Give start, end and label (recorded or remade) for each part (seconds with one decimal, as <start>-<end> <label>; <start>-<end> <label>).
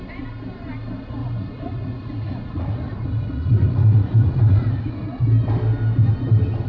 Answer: 0.0-1.2 recorded; 1.2-5.2 remade; 5.2-6.7 recorded